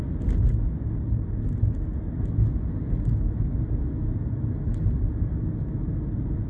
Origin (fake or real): real